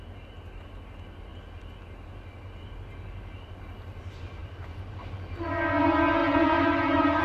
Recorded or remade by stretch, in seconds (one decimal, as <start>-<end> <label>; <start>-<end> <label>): 0.0-4.4 recorded; 4.4-5.0 remade; 5.0-6.2 recorded; 6.2-7.2 remade